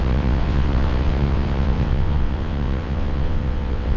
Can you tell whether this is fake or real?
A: fake